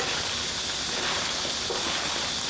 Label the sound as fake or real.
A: real